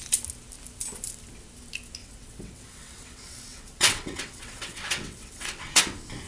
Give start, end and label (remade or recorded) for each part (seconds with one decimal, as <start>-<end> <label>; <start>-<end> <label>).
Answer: 0.0-2.0 recorded; 2.0-5.8 remade; 5.8-6.3 recorded